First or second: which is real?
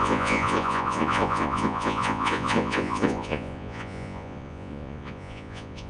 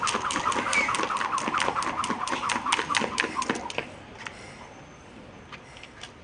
second